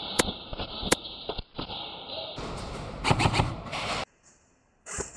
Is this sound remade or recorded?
remade